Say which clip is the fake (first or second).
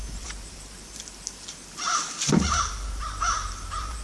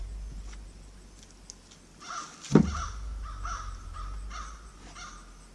first